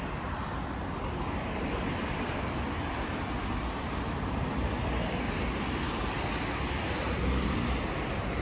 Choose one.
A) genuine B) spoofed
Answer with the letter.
A